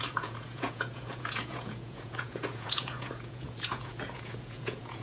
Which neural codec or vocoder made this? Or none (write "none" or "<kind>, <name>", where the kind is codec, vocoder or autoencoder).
vocoder, Vocos